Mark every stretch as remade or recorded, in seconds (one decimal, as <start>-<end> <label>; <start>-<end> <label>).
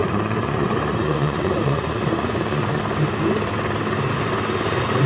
0.0-2.8 remade; 2.8-5.1 recorded